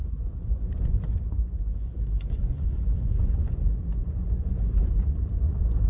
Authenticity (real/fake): fake